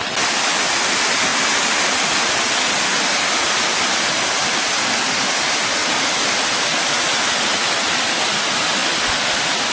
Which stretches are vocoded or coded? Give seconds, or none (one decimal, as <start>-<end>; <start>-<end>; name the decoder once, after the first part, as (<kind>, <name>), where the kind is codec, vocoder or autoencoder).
none